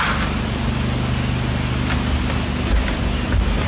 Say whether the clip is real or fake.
real